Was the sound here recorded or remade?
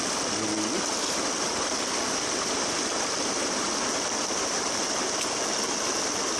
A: recorded